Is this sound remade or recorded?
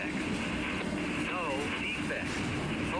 recorded